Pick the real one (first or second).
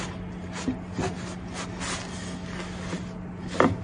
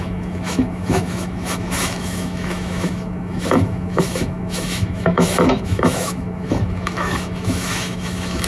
first